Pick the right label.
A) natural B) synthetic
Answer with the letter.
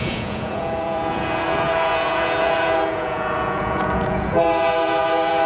B